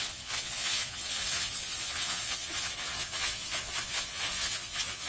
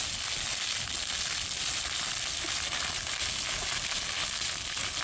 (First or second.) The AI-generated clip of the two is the first